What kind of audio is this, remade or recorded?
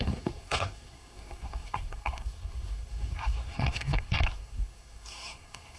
remade